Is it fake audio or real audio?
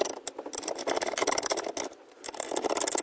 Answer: real